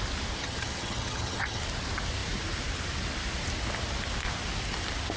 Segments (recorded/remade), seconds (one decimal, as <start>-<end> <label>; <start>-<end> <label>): 0.0-0.4 recorded; 0.4-1.6 remade; 1.6-5.2 recorded